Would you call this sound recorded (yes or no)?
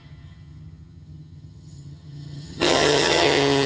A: no